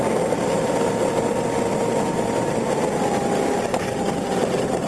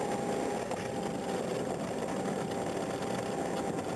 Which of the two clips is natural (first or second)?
second